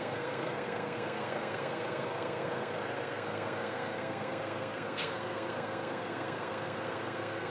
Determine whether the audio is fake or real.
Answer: fake